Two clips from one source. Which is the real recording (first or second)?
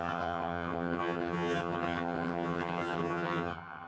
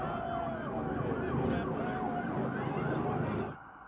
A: second